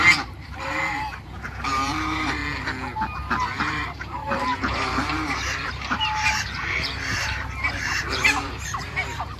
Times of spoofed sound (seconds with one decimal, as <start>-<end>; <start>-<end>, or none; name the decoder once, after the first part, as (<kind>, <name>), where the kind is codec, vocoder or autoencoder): 0.0-2.4 (vocoder, BigVGAN v2); 3.6-9.4